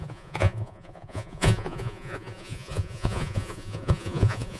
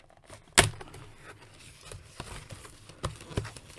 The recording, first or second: second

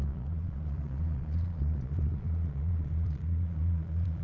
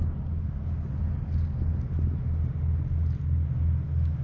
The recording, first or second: second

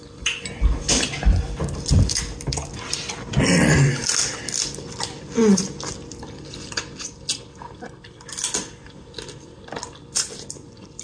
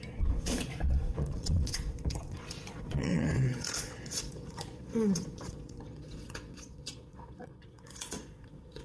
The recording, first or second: first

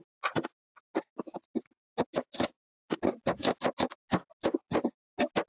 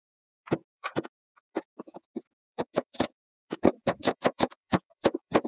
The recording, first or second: first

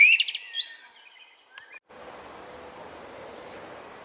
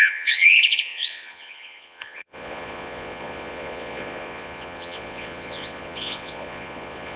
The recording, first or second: first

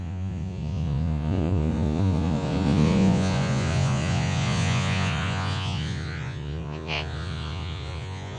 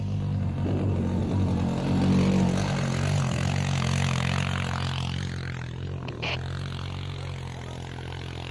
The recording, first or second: second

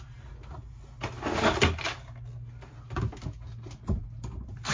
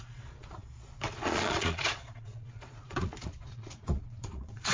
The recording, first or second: first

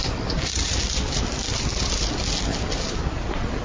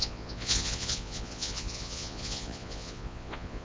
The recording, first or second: first